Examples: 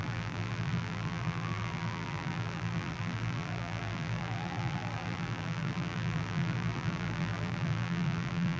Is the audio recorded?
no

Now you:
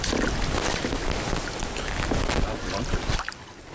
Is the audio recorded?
yes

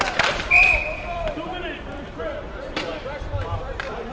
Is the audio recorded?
no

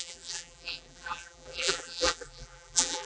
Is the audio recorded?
no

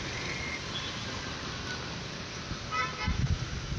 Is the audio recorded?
yes